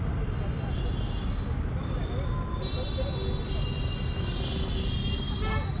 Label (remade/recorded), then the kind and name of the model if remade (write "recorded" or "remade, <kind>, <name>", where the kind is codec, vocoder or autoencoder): recorded